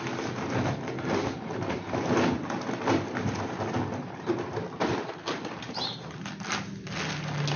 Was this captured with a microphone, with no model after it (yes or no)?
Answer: yes